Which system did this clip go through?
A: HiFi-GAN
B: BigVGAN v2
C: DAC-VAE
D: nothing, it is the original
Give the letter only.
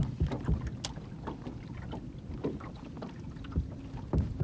D